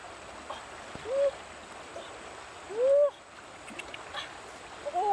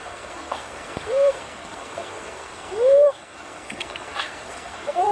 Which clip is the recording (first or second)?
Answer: first